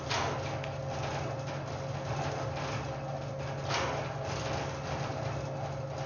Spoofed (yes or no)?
no